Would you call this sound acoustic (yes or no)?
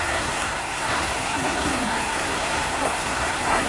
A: no